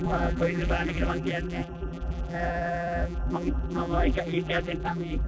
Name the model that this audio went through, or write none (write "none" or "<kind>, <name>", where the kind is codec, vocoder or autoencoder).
vocoder, BigVGAN v2